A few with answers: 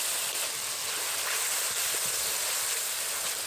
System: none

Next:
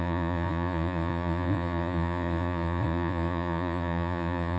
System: vocoder, Vocos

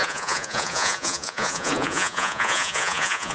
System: vocoder, Vocos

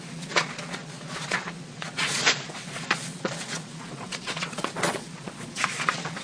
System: vocoder, Vocos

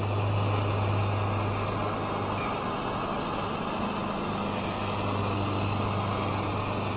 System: none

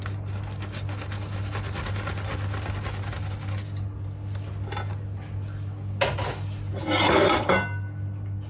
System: none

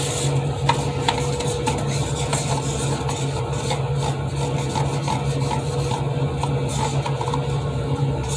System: none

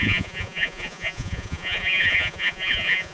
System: vocoder, Vocos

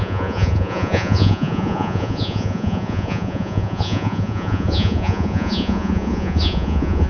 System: vocoder, Vocos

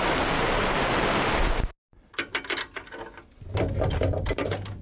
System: none